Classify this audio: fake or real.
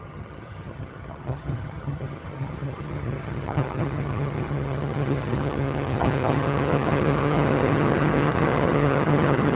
fake